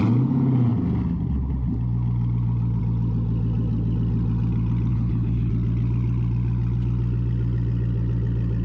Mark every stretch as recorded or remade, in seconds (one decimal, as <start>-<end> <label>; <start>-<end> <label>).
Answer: 0.0-4.9 recorded; 4.9-5.5 remade; 5.5-8.6 recorded